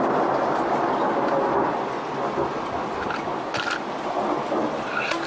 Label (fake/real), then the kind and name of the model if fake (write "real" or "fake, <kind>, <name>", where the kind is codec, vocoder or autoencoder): real